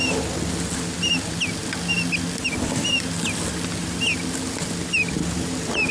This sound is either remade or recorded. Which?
recorded